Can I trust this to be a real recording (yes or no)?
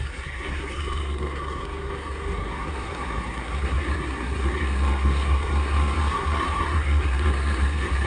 no